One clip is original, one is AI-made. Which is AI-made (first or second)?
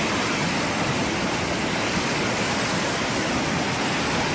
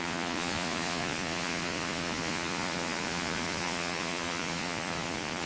second